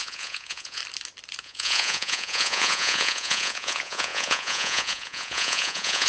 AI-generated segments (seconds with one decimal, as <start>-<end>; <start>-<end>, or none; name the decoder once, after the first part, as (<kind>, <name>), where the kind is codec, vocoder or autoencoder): 0.0-0.8 (vocoder, Vocos); 1.4-6.1